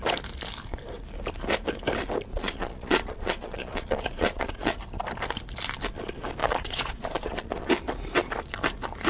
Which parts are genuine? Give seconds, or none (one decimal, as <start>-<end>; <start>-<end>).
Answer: 0.0-2.3; 4.8-6.4; 7.7-9.1